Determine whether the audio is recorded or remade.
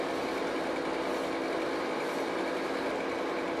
recorded